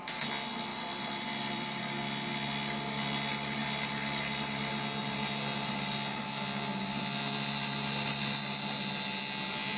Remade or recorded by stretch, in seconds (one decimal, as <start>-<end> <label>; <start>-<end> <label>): 0.0-0.7 recorded; 0.7-1.8 remade; 1.8-9.8 recorded